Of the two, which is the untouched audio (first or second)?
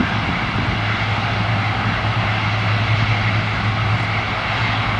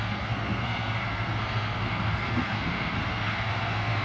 first